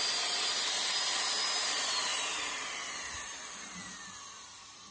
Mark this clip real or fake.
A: real